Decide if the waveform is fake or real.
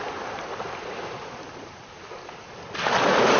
real